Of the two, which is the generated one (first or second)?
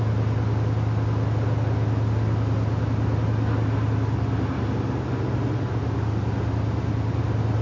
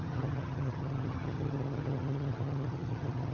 second